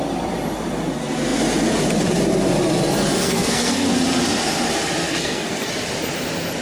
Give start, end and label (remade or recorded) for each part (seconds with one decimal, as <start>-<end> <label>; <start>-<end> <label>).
0.0-3.2 recorded; 3.2-3.9 remade; 3.9-5.0 recorded; 5.0-5.7 remade; 5.7-6.6 recorded